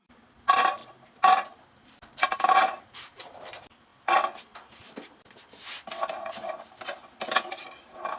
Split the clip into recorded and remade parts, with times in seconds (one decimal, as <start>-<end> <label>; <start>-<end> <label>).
0.0-8.2 recorded